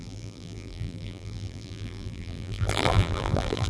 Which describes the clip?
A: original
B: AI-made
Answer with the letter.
B